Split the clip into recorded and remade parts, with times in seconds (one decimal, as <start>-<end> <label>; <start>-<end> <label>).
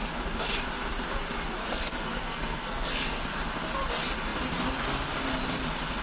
0.0-1.6 recorded; 1.6-3.4 remade; 3.4-6.0 recorded